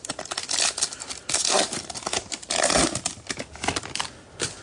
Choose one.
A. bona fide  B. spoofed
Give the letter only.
A